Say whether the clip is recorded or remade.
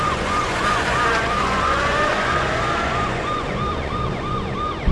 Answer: remade